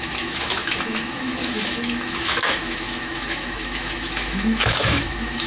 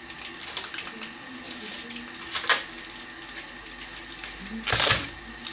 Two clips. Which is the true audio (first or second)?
second